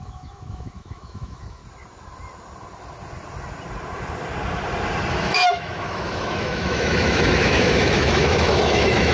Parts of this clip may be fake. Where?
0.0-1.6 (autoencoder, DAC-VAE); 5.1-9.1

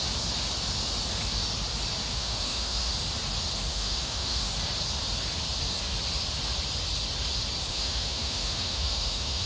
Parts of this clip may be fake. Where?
2.1-2.9 (autoencoder, DAC-VAE); 3.7-4.5; 7.7-9.5

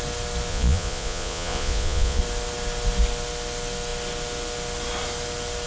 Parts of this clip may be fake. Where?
0.5-2.2 (vocoder, Vocos)

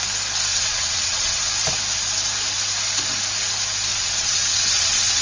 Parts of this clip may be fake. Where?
0.5-1.5 (vocoder, WaveNeXt); 3.9-5.2

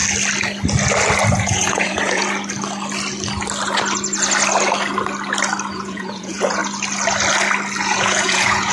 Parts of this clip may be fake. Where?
1.3-2.2 (vocoder, Vocos); 5.7-6.6; 7.8-8.7